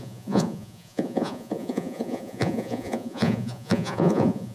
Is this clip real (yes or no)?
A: no